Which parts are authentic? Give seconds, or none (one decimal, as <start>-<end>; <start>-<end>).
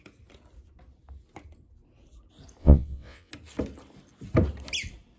0.0-2.6; 3.3-5.2